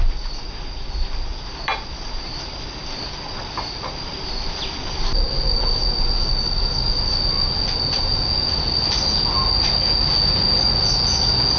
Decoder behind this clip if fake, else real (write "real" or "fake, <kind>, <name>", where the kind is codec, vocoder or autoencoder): real